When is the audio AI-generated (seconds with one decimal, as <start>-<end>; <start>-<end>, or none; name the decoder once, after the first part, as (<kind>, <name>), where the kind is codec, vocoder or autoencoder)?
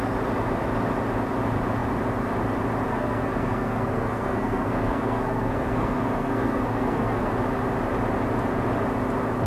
2.9-7.3 (codec, SNAC)